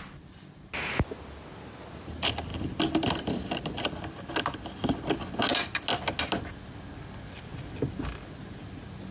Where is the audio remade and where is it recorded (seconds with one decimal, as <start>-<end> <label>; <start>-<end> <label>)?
0.0-9.1 recorded